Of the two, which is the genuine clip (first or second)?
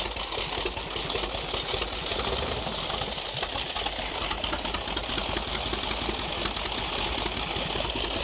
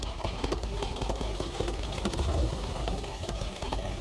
first